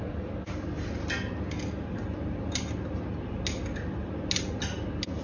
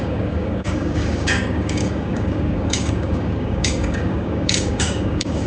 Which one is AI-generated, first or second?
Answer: second